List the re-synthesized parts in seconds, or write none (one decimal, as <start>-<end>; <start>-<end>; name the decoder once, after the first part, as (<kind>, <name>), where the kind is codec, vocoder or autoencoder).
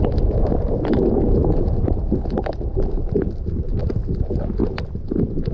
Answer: 1.4-3.8 (vocoder, BigVGAN v2)